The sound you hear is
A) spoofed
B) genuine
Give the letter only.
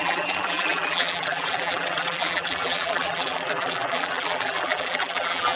A